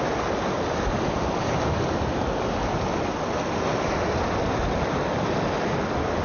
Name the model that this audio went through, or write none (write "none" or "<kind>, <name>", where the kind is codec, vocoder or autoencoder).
none